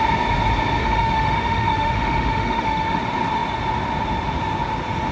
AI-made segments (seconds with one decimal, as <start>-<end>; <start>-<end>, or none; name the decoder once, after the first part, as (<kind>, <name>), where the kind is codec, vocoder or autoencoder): 0.8-3.0 (autoencoder, DAC-VAE)